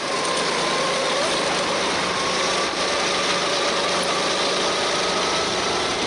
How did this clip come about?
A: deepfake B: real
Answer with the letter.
B